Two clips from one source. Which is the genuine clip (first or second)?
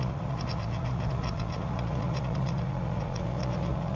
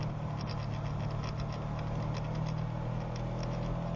second